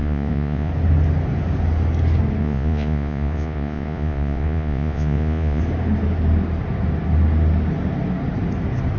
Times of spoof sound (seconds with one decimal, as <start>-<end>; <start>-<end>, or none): 0.0-0.7; 2.4-5.6